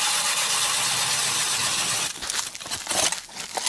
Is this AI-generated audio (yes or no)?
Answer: no